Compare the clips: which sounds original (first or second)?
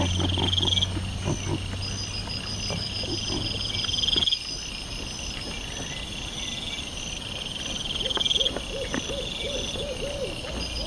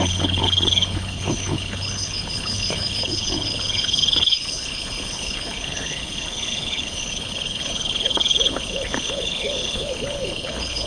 first